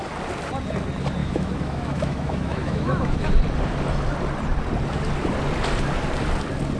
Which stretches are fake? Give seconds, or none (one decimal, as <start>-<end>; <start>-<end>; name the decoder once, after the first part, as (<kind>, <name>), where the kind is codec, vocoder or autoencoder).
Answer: 1.2-3.3 (autoencoder, DAC-VAE)